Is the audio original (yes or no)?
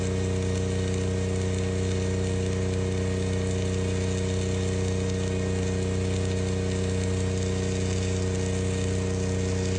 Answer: yes